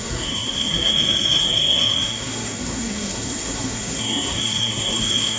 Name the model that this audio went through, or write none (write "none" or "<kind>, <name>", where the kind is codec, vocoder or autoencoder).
codec, SNAC